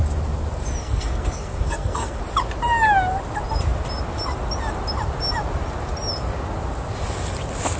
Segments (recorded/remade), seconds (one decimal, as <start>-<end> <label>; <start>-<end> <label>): 0.0-0.8 recorded; 0.8-2.2 remade; 2.2-7.8 recorded